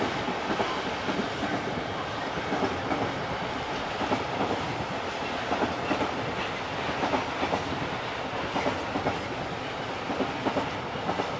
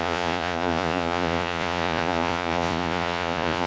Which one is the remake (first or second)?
second